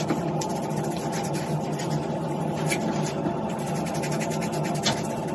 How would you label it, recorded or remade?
recorded